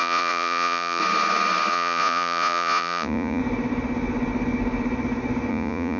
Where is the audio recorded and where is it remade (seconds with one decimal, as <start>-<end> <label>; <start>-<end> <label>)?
0.0-1.0 remade; 1.0-1.7 recorded; 1.7-3.4 remade; 3.4-5.5 recorded; 5.5-6.0 remade